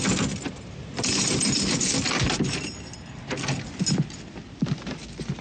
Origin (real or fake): real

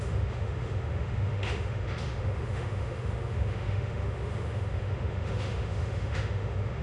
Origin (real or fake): fake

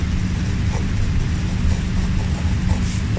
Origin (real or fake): real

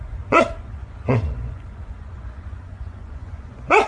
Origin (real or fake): fake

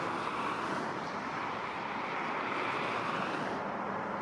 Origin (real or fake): real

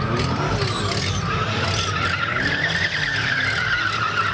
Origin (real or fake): real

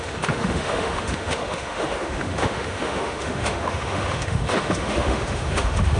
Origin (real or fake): fake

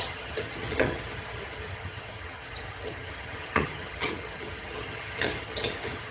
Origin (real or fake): fake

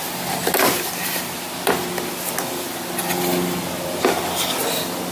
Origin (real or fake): real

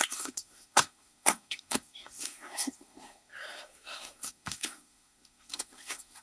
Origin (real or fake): fake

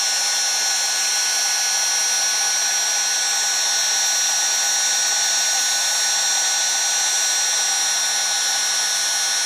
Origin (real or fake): real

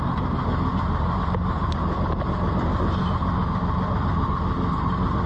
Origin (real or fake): real